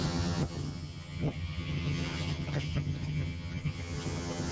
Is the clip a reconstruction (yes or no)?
yes